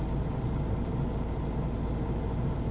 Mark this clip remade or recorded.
recorded